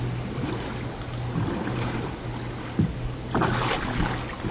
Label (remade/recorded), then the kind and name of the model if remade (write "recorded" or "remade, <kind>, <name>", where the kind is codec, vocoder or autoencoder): recorded